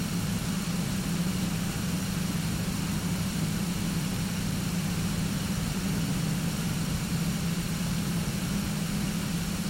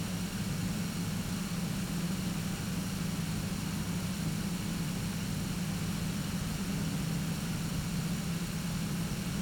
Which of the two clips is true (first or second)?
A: second